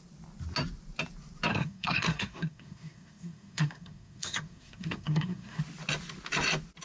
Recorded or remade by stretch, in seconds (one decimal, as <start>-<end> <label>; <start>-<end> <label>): 0.0-1.5 recorded; 1.5-5.6 remade; 5.6-6.8 recorded